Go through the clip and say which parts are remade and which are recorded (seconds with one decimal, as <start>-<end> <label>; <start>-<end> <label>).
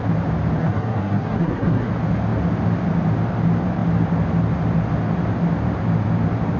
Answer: 0.0-0.6 recorded; 0.6-1.9 remade; 1.9-6.6 recorded